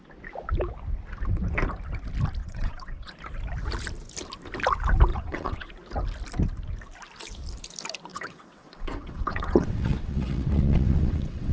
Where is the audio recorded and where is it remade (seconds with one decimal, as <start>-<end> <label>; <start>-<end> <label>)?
0.0-2.4 recorded; 2.4-3.1 remade; 3.1-5.1 recorded; 5.1-5.7 remade; 5.7-8.1 recorded; 8.1-11.5 remade